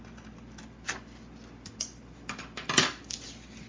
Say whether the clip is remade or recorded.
recorded